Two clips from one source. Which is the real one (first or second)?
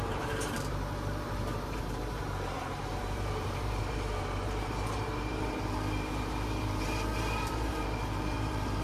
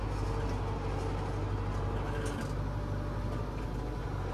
second